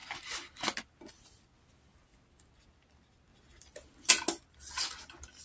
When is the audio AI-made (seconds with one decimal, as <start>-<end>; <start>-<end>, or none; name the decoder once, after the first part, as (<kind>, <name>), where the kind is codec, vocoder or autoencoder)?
none